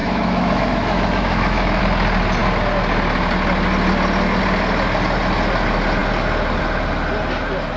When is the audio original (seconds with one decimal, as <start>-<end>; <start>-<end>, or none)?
1.8-7.8